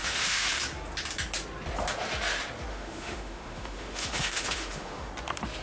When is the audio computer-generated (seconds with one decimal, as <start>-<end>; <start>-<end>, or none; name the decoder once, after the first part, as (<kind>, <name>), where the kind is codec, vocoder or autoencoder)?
0.0-0.5 (autoencoder, DAC-VAE); 2.7-5.1